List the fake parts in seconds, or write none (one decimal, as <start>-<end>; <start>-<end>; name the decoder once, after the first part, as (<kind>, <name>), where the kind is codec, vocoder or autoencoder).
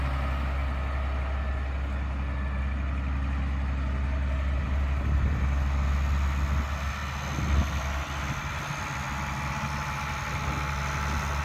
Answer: none